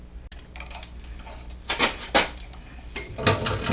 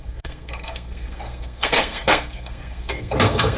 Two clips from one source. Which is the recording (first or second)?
first